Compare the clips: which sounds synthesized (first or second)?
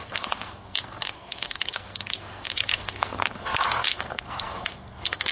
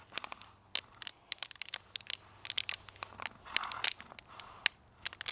first